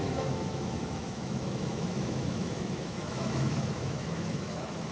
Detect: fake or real fake